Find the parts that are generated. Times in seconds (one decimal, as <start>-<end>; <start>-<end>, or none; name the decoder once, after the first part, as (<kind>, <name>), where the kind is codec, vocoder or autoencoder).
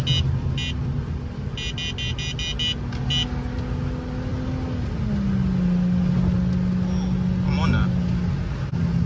none